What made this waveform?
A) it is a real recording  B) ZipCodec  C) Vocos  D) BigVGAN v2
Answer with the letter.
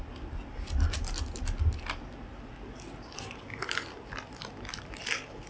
A